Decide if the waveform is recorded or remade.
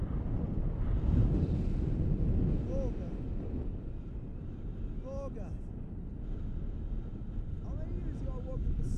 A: recorded